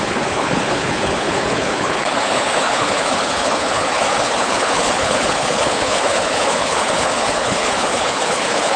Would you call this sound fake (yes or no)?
yes